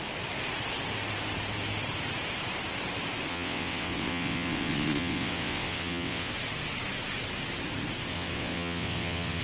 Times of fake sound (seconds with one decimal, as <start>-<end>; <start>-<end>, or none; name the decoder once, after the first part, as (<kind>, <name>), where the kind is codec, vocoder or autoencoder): 3.3-6.3 (vocoder, WaveNeXt); 8.1-9.4